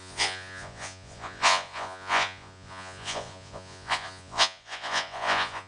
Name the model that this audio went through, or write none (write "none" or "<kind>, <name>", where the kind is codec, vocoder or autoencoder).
vocoder, Vocos